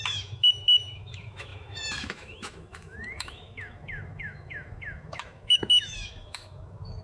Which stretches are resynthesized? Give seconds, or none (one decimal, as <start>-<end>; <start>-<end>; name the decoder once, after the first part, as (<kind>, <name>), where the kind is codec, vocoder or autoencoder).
0.0-7.0 (autoencoder, DAC-VAE)